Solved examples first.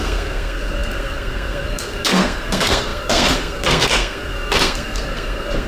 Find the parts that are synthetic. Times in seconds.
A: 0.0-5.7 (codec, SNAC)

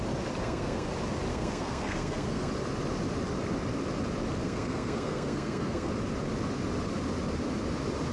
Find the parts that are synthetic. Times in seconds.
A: 0.4-0.9 (codec, SNAC); 1.3-2.5; 4.4-5.9